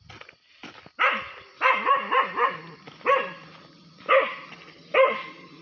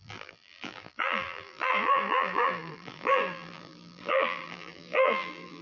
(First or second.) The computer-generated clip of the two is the second